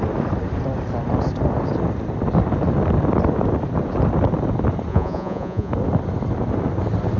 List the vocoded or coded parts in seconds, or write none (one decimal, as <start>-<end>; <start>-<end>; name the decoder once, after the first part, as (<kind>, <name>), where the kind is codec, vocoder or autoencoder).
4.9-5.7 (vocoder, Vocos)